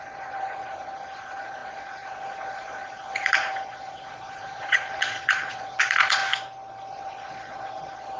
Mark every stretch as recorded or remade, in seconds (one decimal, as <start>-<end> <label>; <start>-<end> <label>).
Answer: 0.0-6.2 remade; 6.2-6.9 recorded; 6.9-8.2 remade